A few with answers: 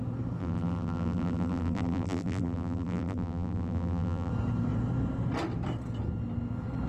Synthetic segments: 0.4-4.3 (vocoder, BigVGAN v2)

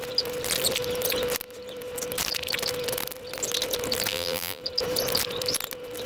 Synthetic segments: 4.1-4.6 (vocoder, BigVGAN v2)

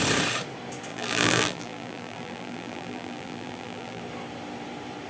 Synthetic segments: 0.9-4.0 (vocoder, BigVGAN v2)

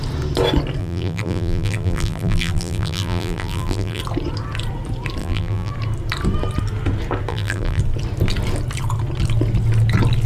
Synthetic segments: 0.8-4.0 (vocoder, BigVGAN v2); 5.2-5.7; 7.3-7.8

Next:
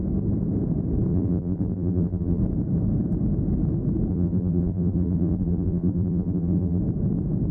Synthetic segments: 1.1-2.4 (vocoder, BigVGAN v2); 4.1-6.8

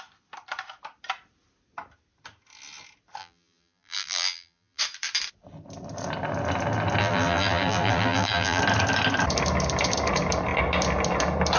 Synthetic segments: 3.2-4.8 (vocoder, BigVGAN v2); 7.0-8.6

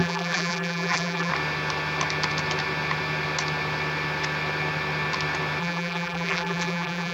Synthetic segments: 0.0-1.3 (vocoder, BigVGAN v2); 5.6-7.1

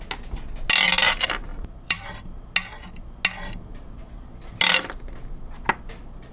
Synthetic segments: 1.5-2.1 (vocoder, BigVGAN v2)